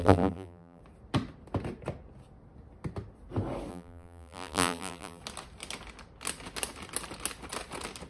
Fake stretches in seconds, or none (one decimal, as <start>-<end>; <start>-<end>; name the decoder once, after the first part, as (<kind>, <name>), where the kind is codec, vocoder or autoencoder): 0.0-0.8 (vocoder, BigVGAN v2); 3.7-5.2